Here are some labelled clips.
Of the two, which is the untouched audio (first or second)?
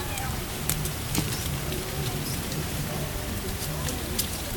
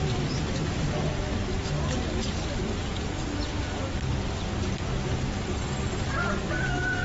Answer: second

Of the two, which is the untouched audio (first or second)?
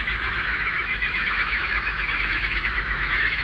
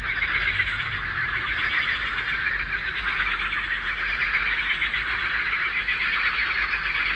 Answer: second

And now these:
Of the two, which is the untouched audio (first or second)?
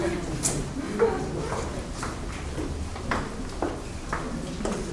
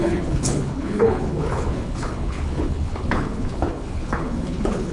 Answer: first